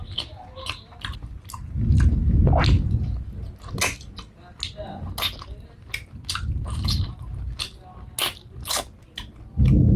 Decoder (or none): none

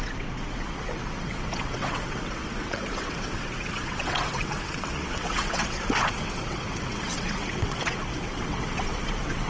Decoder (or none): vocoder, WaveNeXt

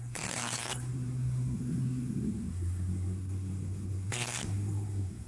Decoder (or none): codec, SNAC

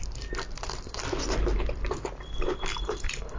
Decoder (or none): none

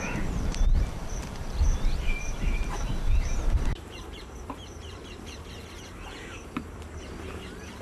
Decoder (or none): vocoder, BigVGAN v2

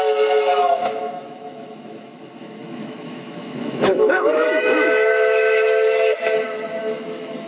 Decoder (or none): autoencoder, DAC-VAE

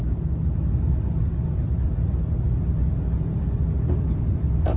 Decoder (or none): none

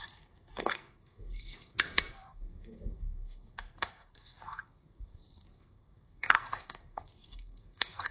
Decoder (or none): codec, SNAC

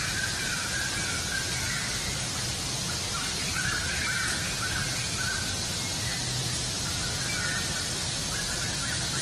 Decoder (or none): none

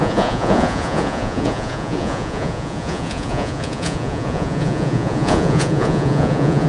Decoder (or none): vocoder, Vocos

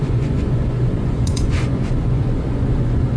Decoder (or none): vocoder, Vocos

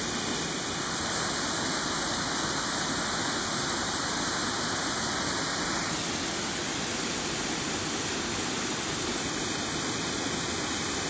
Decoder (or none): none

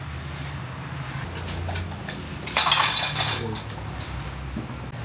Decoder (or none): none